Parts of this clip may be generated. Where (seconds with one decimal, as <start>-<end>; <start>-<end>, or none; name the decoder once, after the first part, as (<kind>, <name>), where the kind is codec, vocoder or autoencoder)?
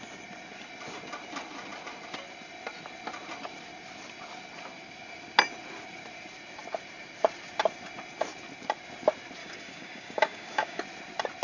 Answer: 9.4-10.8 (codec, DAC)